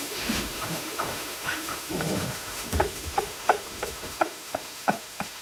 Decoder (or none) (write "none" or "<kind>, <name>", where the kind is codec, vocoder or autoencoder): autoencoder, DAC-VAE